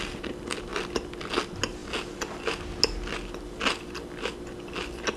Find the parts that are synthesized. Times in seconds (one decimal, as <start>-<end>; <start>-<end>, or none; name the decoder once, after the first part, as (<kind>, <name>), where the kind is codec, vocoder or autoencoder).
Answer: none